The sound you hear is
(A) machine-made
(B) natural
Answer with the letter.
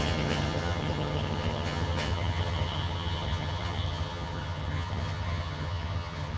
A